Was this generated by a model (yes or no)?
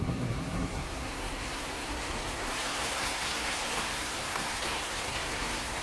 yes